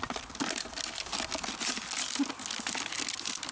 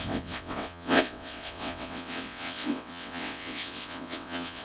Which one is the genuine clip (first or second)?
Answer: first